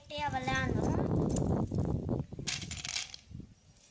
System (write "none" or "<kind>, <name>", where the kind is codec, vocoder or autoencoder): none